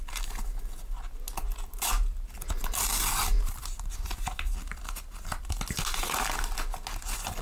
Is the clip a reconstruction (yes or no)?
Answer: no